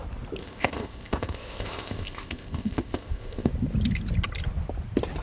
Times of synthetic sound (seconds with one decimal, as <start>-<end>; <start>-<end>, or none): 0.4-3.5